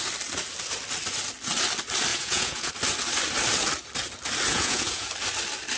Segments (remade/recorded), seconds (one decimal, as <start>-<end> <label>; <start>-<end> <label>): 0.0-2.1 recorded; 2.1-2.7 remade; 2.7-4.5 recorded; 4.5-5.1 remade; 5.1-5.8 recorded